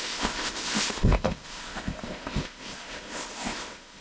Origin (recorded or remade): remade